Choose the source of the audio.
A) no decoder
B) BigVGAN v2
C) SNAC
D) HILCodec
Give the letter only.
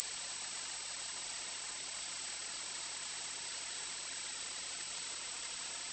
B